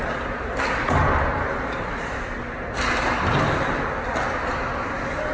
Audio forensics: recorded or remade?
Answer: recorded